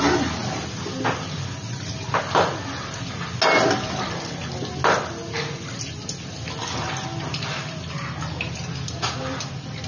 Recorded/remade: recorded